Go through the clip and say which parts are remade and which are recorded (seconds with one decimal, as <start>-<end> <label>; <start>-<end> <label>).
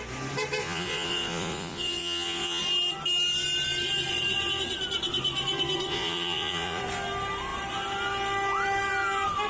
0.0-0.6 recorded; 0.6-2.6 remade; 2.6-5.9 recorded; 5.9-6.8 remade; 6.8-9.5 recorded